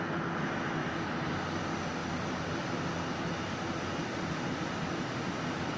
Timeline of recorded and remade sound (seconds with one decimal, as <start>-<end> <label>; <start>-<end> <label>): 0.0-0.8 recorded; 0.8-1.6 remade; 1.6-2.0 recorded; 2.0-2.9 remade; 2.9-4.0 recorded; 4.0-5.8 remade